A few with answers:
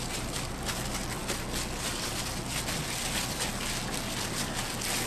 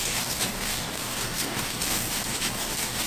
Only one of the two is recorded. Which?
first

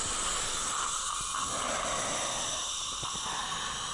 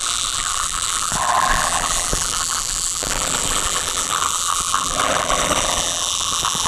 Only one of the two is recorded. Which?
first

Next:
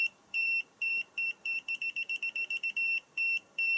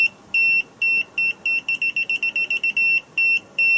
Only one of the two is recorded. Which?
second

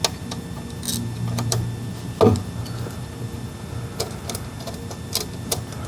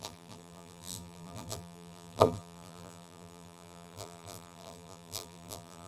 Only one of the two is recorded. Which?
first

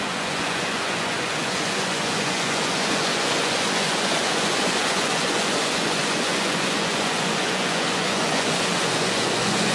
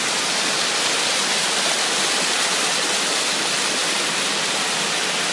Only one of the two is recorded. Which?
second